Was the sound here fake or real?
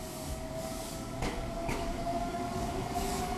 fake